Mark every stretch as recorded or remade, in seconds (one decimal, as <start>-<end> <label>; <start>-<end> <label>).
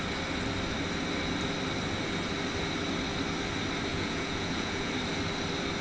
0.0-3.9 recorded; 3.9-4.9 remade; 4.9-5.8 recorded